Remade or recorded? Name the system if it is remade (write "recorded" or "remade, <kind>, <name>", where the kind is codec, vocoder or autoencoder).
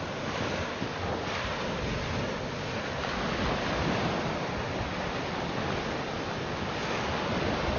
recorded